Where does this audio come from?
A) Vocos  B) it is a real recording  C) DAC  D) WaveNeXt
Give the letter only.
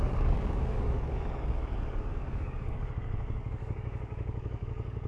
C